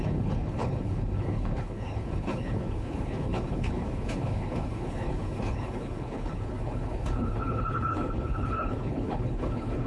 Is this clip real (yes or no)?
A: no